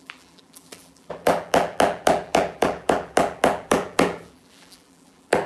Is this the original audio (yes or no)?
no